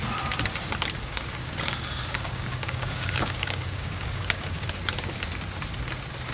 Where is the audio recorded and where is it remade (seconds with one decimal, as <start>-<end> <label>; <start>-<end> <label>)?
0.0-1.0 recorded; 1.0-4.8 remade; 4.8-6.3 recorded